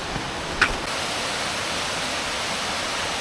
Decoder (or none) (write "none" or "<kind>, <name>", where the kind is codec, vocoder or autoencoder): none